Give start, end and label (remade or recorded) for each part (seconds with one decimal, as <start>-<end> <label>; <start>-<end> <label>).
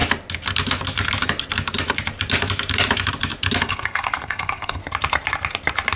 0.0-3.6 recorded; 3.6-4.8 remade; 4.8-6.0 recorded